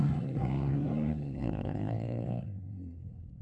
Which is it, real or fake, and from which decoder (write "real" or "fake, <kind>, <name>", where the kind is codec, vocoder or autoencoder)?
fake, codec, SNAC